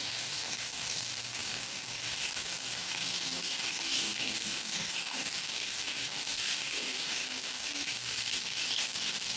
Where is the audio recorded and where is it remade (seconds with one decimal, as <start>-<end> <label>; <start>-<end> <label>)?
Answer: 0.0-9.4 remade